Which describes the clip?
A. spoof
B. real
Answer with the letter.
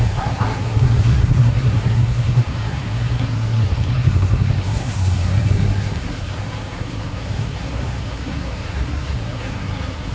A